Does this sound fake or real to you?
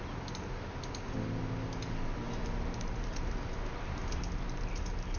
real